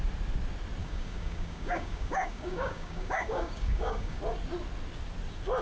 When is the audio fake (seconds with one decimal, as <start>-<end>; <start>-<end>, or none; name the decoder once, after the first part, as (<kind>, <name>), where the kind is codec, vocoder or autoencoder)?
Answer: 0.8-4.2 (codec, DAC)